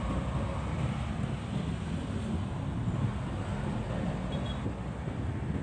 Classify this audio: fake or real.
real